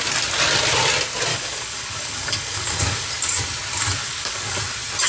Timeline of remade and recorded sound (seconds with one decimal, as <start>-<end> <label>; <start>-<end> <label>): 0.0-1.3 recorded; 1.3-3.1 remade; 3.1-4.0 recorded; 4.0-4.6 remade; 4.6-5.1 recorded